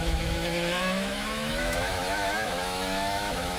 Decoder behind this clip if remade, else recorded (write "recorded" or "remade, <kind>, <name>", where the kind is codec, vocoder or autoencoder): remade, autoencoder, DAC-VAE